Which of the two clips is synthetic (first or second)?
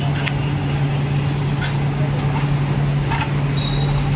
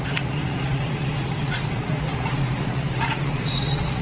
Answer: second